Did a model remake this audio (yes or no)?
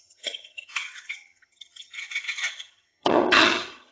yes